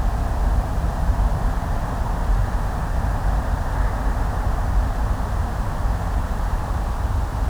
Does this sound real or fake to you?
fake